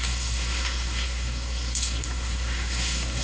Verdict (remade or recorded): remade